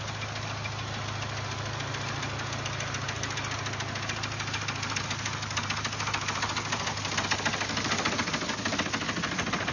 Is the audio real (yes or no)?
yes